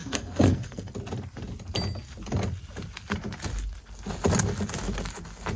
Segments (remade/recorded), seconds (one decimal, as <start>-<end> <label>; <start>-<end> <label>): 0.0-0.9 remade; 0.9-5.6 recorded